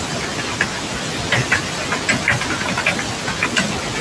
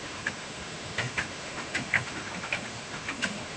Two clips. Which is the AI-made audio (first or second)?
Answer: second